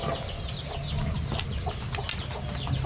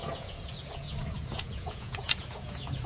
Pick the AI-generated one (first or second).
second